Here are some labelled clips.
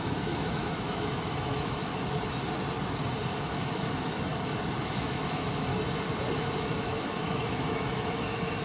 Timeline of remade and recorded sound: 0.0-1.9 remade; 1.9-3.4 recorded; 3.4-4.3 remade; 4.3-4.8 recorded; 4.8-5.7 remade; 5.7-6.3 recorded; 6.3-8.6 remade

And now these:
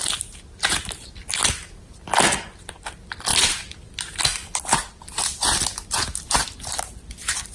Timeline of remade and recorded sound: 0.0-7.5 recorded